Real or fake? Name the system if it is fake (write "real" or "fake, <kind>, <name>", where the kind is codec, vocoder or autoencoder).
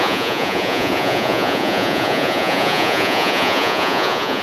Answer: fake, vocoder, Vocos